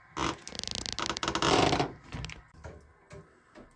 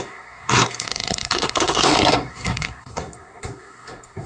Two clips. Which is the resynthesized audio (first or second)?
second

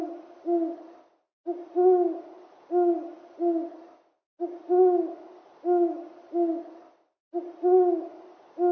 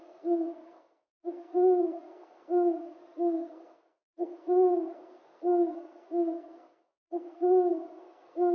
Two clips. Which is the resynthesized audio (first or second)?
second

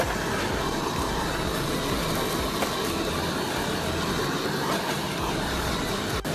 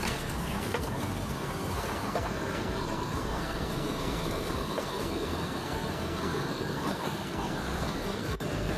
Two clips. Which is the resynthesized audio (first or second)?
second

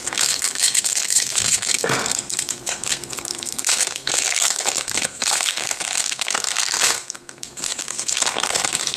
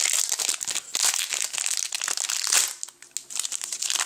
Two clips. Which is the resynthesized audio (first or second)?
first